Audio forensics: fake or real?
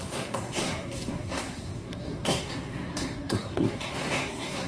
fake